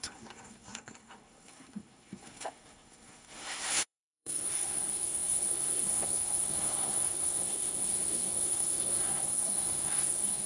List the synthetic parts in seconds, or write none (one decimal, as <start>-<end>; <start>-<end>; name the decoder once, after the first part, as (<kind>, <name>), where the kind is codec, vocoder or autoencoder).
0.0-10.5 (codec, SNAC)